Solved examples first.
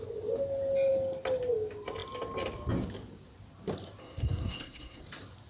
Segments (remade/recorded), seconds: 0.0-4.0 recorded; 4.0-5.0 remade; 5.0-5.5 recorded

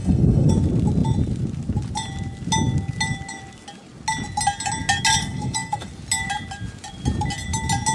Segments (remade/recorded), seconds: 0.0-0.5 remade; 0.5-5.2 recorded; 5.2-5.9 remade; 5.9-7.9 recorded

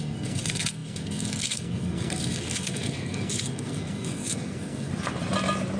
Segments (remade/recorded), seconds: 0.0-4.9 remade; 4.9-5.8 recorded